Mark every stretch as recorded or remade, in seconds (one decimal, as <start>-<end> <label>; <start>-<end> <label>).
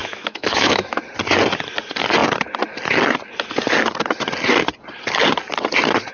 0.0-1.0 remade; 1.0-6.1 recorded